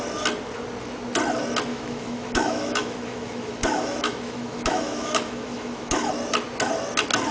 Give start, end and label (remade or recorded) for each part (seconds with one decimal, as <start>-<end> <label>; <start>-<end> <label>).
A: 0.0-1.7 recorded; 1.7-6.1 remade; 6.1-7.3 recorded